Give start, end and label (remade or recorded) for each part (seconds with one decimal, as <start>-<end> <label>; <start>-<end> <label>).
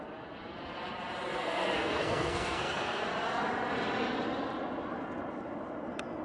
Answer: 0.0-1.3 recorded; 1.3-3.0 remade; 3.0-6.2 recorded